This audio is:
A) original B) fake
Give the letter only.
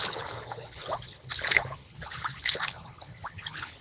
B